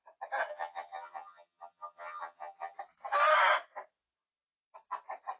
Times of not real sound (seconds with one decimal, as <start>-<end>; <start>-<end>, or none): 0.5-2.8